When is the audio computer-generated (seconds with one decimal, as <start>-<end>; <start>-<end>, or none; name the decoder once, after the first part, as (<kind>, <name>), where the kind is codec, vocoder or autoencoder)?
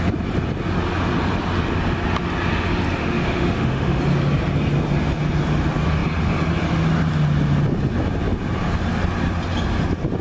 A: 3.0-4.0 (autoencoder, DAC-VAE)